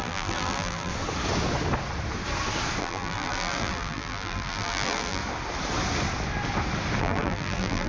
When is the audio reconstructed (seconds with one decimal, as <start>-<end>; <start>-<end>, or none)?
0.0-0.9; 2.8-5.2; 7.0-7.9